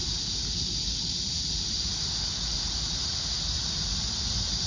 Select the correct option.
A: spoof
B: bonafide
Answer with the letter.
A